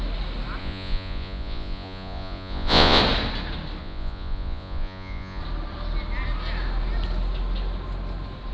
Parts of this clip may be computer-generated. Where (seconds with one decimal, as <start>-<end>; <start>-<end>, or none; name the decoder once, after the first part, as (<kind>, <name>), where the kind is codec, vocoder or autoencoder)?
0.6-3.0 (vocoder, Vocos); 3.8-5.4